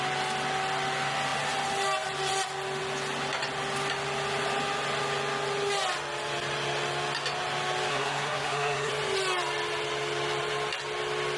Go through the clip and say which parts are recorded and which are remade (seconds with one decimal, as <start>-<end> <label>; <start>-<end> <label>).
0.0-7.9 recorded; 7.9-8.9 remade; 8.9-11.4 recorded